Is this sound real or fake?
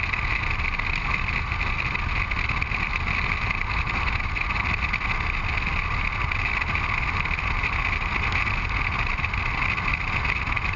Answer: real